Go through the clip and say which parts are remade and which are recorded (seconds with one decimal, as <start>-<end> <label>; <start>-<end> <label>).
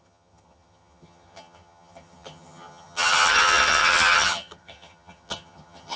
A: 0.0-6.0 remade